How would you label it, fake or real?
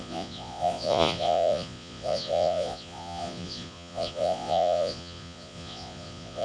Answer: fake